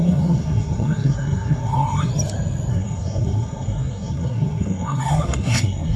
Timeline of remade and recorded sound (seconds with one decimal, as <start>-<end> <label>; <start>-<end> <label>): 0.0-2.1 remade; 2.1-2.7 recorded; 2.7-6.0 remade